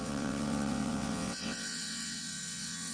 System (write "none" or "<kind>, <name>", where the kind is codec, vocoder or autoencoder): vocoder, WaveNeXt